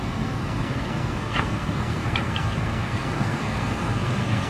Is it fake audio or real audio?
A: fake